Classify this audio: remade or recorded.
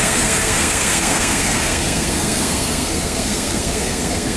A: remade